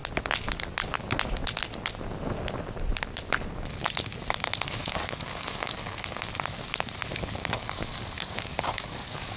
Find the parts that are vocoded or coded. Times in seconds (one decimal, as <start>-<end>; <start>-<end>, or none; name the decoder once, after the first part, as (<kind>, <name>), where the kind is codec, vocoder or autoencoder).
4.8-6.3 (codec, DAC); 7.1-9.4